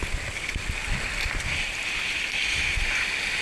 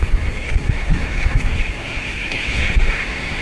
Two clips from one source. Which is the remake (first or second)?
second